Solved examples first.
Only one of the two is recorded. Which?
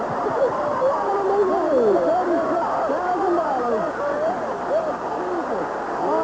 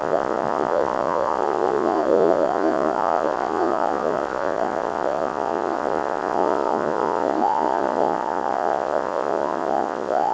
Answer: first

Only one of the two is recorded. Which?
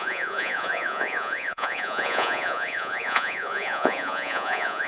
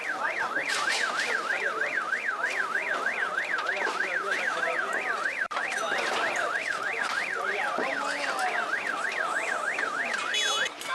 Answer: second